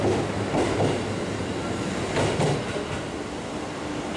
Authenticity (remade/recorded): recorded